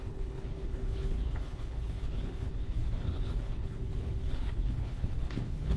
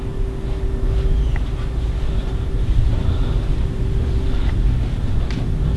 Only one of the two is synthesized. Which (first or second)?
first